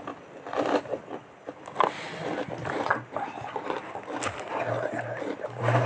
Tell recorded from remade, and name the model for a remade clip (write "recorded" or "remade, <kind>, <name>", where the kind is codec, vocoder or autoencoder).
recorded